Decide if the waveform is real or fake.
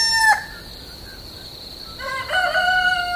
real